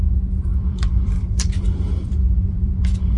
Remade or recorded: remade